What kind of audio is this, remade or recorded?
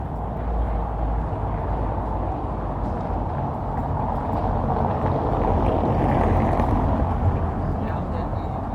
recorded